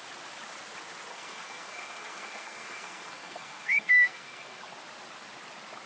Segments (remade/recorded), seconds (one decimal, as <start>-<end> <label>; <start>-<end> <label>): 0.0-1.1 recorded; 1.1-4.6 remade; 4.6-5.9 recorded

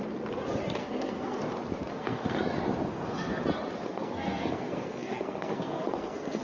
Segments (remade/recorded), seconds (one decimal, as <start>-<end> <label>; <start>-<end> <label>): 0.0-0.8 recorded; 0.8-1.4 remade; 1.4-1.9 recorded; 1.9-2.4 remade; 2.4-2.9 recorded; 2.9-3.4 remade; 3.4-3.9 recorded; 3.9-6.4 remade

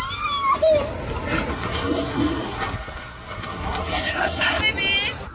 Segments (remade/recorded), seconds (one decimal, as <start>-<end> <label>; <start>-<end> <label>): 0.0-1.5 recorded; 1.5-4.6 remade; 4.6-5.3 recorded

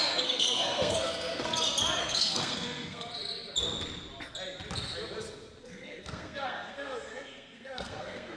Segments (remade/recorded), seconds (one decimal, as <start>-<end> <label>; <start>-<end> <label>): 0.0-1.5 remade; 1.5-2.0 recorded; 2.0-3.1 remade; 3.1-5.6 recorded; 5.6-8.4 remade